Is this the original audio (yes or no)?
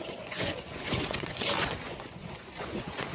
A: no